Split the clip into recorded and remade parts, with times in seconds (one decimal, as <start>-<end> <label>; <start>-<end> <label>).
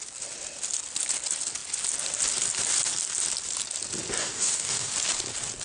0.0-4.2 recorded; 4.2-4.9 remade; 4.9-5.6 recorded